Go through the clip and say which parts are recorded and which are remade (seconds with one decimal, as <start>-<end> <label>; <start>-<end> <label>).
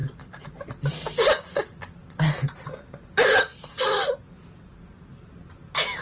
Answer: 0.0-3.5 recorded; 3.5-4.2 remade; 4.2-6.0 recorded